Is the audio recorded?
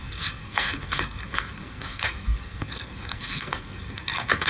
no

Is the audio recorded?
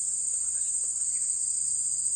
yes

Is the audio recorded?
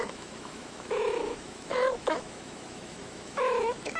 no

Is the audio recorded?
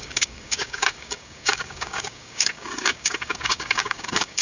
no